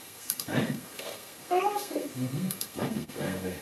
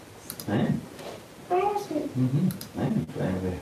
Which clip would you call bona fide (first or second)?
second